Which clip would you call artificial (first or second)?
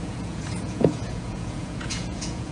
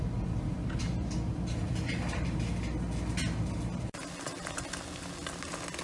first